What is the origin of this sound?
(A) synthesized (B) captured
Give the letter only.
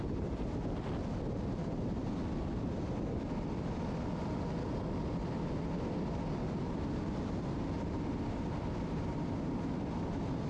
B